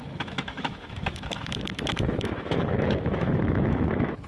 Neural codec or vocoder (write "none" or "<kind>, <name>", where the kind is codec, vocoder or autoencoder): autoencoder, DAC-VAE